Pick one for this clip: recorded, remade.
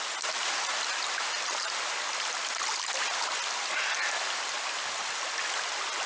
recorded